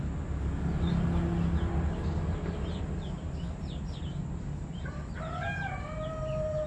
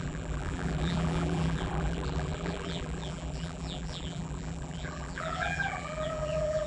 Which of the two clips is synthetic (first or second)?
second